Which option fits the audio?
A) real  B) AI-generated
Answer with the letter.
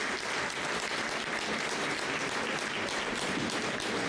A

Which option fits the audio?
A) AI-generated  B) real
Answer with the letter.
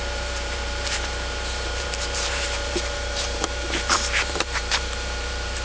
A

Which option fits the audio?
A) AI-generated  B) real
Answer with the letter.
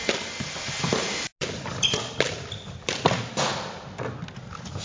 B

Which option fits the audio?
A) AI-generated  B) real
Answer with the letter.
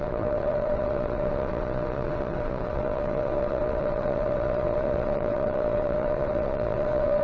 A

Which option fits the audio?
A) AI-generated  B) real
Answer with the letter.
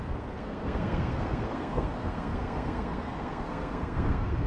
A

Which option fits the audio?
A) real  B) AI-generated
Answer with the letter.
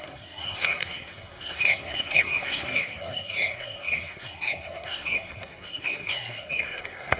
B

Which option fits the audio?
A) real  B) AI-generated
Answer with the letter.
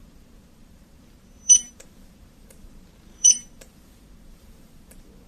B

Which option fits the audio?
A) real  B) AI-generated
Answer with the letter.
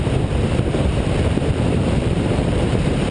B